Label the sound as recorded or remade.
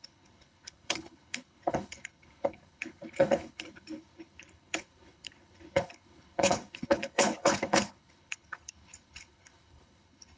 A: remade